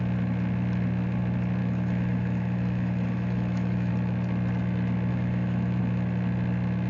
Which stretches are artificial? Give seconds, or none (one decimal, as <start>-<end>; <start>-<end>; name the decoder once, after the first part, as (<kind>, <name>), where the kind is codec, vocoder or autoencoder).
1.6-3.9 (autoencoder, DAC-VAE); 5.1-5.8